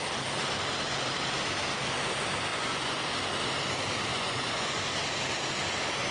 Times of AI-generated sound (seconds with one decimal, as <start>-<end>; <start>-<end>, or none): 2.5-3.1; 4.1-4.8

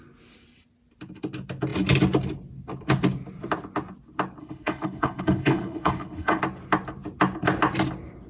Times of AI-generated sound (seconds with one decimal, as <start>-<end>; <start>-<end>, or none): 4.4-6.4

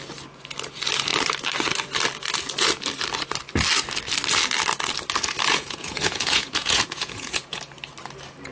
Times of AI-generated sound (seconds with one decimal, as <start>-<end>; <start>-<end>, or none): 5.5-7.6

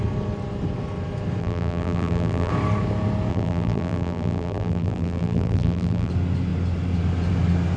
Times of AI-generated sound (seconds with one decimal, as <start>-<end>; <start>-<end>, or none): 1.4-2.5; 3.3-6.1

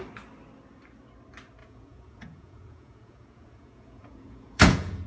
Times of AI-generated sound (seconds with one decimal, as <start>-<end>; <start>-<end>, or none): 1.6-5.1

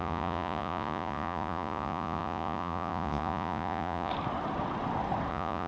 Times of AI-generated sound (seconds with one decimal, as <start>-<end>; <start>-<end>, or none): 0.0-4.1; 5.3-5.7